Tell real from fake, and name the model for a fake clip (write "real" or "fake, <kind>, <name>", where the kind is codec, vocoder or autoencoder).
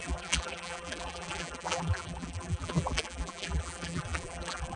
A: fake, vocoder, BigVGAN v2